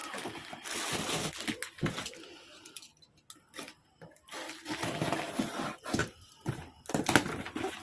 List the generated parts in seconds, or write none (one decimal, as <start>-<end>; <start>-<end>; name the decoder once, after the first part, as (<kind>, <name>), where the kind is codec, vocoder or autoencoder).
6.0-7.2 (vocoder, BigVGAN v2)